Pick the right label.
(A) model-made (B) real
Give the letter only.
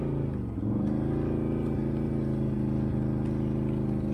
B